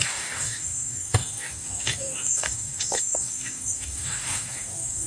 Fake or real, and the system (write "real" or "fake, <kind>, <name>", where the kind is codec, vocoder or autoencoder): fake, codec, DAC